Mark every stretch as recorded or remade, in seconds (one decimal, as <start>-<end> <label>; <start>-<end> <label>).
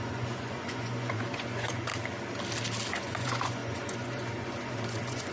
0.0-1.9 remade; 1.9-2.9 recorded; 2.9-5.3 remade